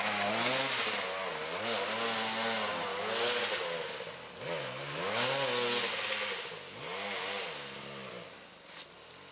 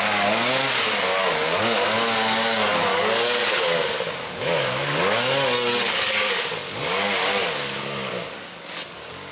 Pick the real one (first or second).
first